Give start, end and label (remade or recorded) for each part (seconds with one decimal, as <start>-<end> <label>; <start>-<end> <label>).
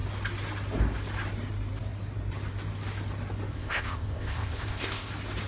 0.0-3.5 recorded; 3.5-5.1 remade; 5.1-5.5 recorded